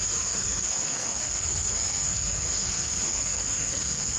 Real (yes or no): no